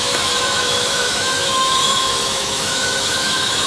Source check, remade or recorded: remade